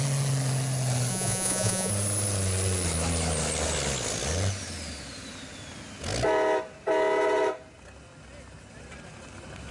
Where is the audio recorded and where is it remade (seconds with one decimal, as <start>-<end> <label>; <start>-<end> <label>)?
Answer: 0.0-1.1 recorded; 1.1-1.9 remade; 1.9-9.7 recorded